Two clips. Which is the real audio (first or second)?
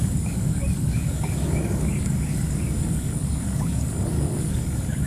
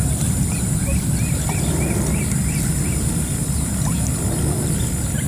second